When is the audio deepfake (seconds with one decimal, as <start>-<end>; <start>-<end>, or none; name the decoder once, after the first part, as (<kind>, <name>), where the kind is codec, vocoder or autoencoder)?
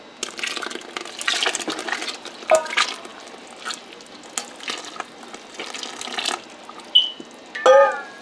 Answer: none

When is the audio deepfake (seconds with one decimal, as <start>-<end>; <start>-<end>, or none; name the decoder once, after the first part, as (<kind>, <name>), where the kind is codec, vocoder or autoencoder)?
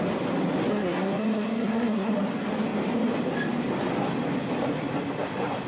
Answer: 0.7-2.1 (codec, SNAC)